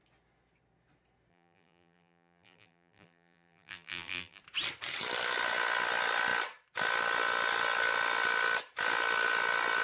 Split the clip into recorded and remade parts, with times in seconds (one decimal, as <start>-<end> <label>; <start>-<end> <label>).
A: 0.0-1.3 recorded; 1.3-4.4 remade; 4.4-9.8 recorded